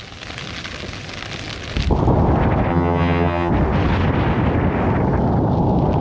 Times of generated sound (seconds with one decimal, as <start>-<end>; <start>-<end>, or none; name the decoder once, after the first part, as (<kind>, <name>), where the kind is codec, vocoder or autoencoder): 2.7-3.5 (vocoder, HiFi-GAN)